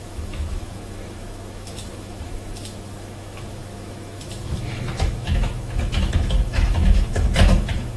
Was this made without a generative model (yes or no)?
no